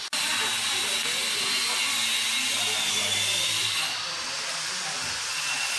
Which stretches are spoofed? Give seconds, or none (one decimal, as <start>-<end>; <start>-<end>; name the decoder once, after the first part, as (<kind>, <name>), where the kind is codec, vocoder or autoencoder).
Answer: none